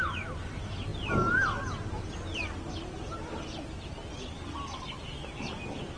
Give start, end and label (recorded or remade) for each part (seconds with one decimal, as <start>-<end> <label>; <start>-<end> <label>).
0.0-6.0 recorded